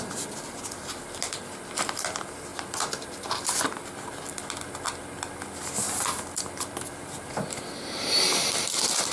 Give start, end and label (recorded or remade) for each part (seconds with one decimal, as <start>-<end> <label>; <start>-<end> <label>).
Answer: 0.0-2.5 recorded; 2.5-4.1 remade; 4.1-9.1 recorded